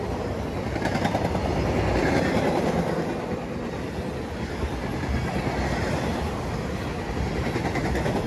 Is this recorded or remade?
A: recorded